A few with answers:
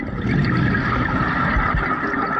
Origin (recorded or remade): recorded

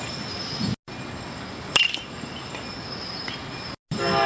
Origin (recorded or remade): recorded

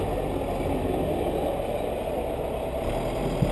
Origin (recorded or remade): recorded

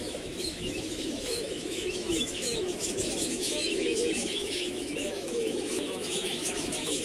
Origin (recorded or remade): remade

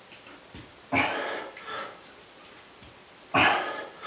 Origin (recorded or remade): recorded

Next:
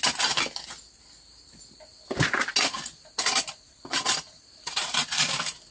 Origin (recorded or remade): recorded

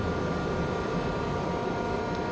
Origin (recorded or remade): recorded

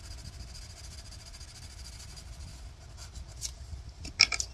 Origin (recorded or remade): recorded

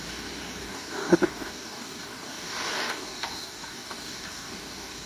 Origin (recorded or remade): remade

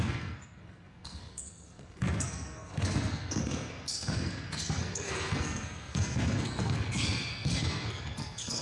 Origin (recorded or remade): remade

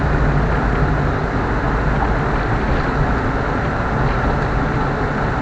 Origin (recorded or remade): recorded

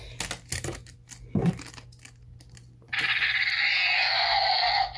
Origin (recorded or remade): recorded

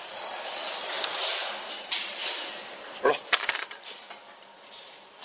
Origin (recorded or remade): recorded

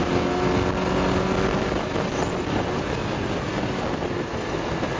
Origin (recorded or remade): recorded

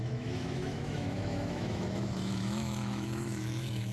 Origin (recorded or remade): remade